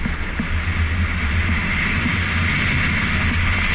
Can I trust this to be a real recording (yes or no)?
yes